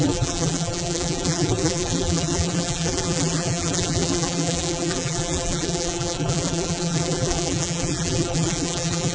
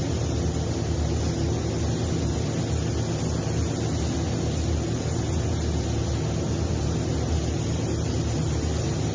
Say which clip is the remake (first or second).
first